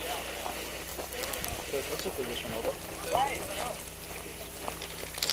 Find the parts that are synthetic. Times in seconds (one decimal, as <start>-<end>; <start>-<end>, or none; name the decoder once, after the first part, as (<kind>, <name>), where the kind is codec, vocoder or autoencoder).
0.9-3.8 (vocoder, BigVGAN v2)